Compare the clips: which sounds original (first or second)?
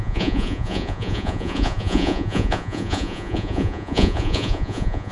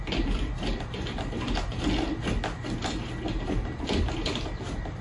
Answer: second